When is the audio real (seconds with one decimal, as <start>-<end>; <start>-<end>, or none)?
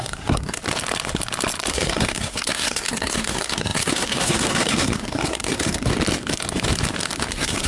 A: 0.6-1.7; 5.9-7.3